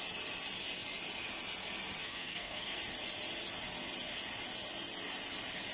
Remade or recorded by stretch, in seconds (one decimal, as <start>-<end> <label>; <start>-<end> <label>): 0.0-2.0 recorded; 2.0-2.8 remade; 2.8-5.7 recorded